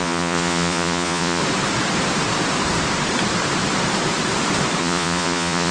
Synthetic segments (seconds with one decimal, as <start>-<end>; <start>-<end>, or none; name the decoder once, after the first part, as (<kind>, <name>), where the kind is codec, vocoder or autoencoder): 0.0-1.4 (vocoder, Vocos); 4.8-5.7